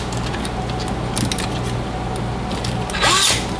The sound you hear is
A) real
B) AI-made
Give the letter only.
A